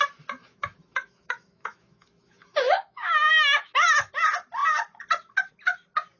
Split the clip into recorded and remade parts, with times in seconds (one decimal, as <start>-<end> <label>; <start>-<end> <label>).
0.0-0.4 recorded; 0.4-4.1 remade; 4.1-6.2 recorded